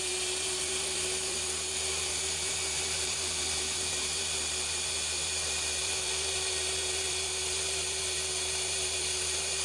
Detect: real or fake fake